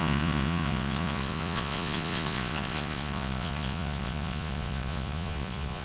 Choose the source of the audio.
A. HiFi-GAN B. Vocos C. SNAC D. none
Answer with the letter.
B